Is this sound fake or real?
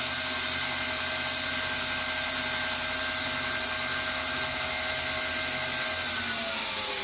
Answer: real